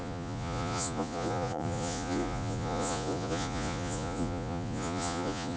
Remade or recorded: remade